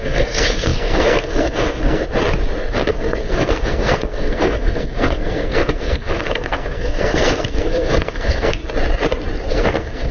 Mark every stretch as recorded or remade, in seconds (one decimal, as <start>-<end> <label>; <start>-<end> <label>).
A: 0.0-2.0 remade; 2.0-2.7 recorded; 2.7-8.6 remade; 8.6-9.5 recorded; 9.5-10.1 remade